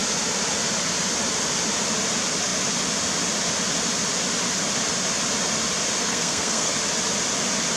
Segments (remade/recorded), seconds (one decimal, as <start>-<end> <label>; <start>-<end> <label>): 0.0-6.0 recorded; 6.0-6.7 remade; 6.7-7.8 recorded